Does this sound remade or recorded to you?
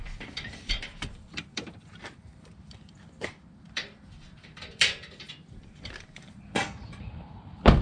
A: remade